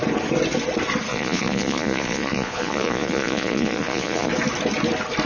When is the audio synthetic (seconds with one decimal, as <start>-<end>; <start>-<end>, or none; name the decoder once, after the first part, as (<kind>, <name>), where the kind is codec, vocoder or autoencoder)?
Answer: 1.1-4.3 (vocoder, Vocos)